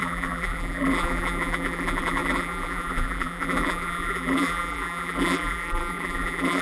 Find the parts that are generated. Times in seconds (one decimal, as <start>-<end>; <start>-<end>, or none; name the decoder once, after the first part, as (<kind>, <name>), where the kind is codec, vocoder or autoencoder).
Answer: 0.0-6.6 (vocoder, BigVGAN v2)